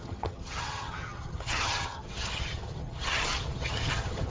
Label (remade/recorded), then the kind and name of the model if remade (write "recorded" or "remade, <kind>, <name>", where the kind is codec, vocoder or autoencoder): remade, vocoder, HiFi-GAN